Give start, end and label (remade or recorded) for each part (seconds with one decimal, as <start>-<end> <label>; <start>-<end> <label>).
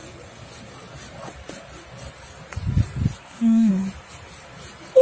0.0-3.2 recorded; 3.2-3.7 remade; 3.7-5.0 recorded